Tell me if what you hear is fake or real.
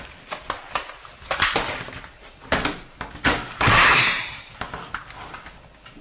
real